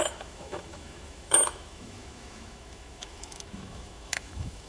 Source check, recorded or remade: remade